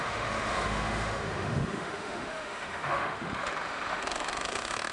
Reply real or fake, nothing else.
fake